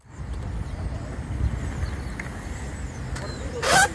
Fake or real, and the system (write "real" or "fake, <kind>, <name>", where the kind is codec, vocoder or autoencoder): real